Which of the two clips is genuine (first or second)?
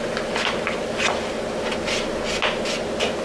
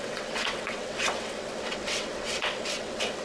first